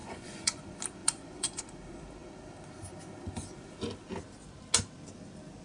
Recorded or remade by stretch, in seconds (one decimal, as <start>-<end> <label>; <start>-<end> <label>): 0.0-0.6 remade; 0.6-1.0 recorded; 1.0-1.6 remade; 1.6-5.6 recorded